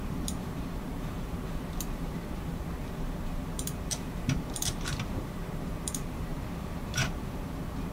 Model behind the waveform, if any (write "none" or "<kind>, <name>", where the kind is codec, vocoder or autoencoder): vocoder, BigVGAN v2